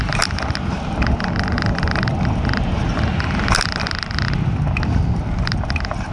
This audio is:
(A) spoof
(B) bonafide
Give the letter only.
B